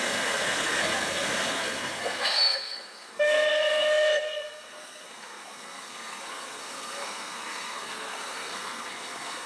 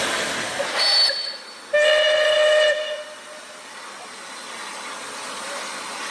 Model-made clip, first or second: first